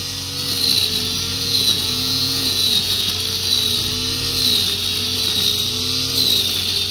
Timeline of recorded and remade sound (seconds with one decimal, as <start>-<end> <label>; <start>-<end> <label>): 0.0-1.3 recorded; 1.3-3.1 remade; 3.1-6.9 recorded

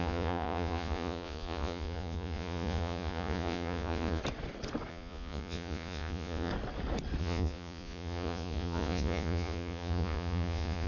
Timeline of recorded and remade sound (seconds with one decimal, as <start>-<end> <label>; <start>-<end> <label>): 0.0-4.2 remade; 4.2-4.9 recorded; 4.9-6.5 remade; 6.5-7.2 recorded; 7.2-10.9 remade